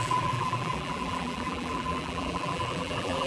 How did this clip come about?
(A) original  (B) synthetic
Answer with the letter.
B